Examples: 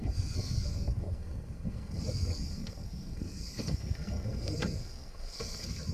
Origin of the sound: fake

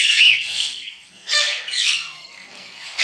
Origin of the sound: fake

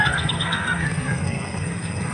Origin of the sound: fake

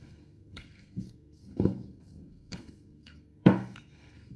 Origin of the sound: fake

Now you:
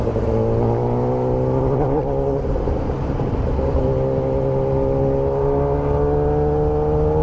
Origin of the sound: real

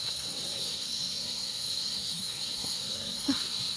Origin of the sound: fake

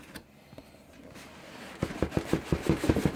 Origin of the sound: real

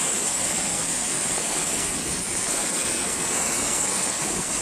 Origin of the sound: fake